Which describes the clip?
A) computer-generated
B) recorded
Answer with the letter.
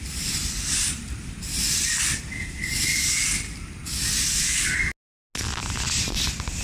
B